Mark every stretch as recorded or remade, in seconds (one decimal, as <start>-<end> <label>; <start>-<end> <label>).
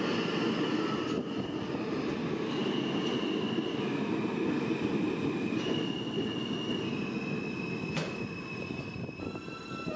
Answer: 0.0-10.0 recorded